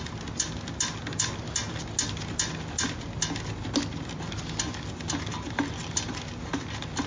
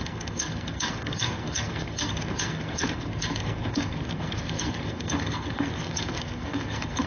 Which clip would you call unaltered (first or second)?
first